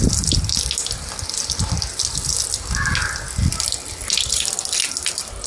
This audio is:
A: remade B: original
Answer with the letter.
B